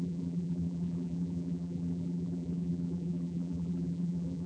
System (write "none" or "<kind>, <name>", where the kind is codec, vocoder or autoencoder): vocoder, BigVGAN v2